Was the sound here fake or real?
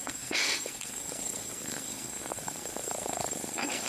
fake